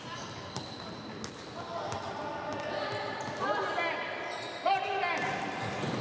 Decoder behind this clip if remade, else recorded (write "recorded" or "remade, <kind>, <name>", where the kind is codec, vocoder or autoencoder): recorded